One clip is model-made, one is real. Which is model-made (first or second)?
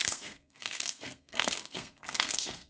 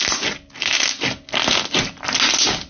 first